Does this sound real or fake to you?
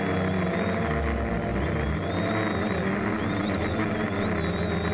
real